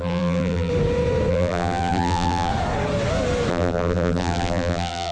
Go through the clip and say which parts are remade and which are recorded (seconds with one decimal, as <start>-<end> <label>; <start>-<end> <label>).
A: 0.0-0.7 remade; 0.7-1.3 recorded; 1.3-2.5 remade; 2.5-3.5 recorded; 3.5-5.1 remade